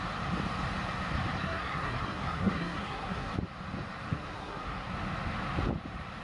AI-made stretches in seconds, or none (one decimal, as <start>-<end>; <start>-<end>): 1.4-3.3; 4.1-4.9